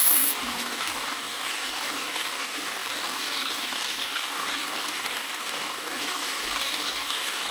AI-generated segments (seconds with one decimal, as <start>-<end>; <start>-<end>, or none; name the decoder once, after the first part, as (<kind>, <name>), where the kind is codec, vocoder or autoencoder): 0.0-7.5 (codec, DAC)